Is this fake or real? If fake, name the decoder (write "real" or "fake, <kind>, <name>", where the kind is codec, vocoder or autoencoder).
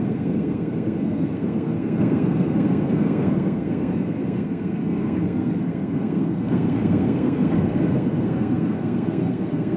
fake, codec, SNAC